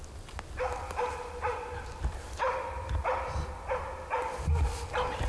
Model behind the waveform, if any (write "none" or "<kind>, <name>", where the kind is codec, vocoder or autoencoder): none